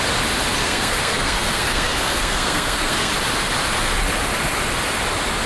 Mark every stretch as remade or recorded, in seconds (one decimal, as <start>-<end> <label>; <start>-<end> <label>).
0.0-0.6 recorded; 0.6-3.1 remade; 3.1-5.5 recorded